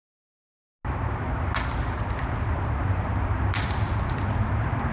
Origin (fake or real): real